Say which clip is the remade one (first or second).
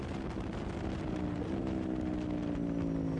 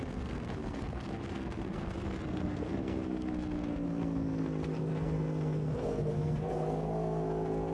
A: second